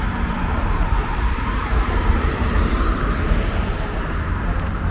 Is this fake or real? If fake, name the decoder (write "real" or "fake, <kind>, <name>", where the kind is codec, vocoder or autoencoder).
fake, vocoder, BigVGAN v2